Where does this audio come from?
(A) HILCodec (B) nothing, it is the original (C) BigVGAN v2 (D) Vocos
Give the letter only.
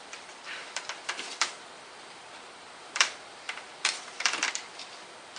C